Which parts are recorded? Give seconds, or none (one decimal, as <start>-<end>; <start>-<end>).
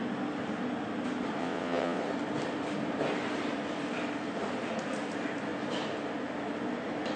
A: 0.0-1.4; 2.0-7.2